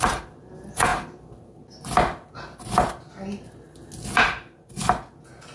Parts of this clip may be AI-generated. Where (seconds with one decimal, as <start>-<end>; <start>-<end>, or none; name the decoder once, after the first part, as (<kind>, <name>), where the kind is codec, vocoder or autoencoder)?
none